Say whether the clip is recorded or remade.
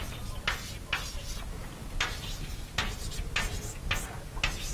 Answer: recorded